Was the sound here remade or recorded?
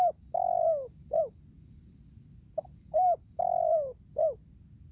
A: recorded